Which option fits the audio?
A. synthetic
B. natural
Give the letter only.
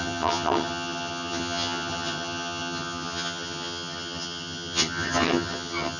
A